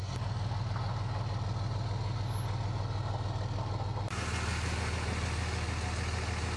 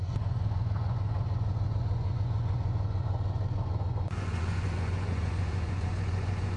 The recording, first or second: first